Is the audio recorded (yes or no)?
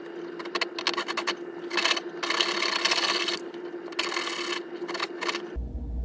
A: yes